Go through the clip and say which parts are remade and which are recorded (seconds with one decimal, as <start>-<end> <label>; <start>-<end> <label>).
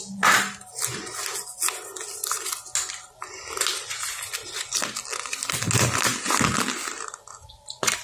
0.0-8.0 recorded